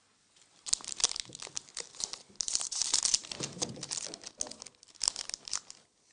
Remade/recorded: recorded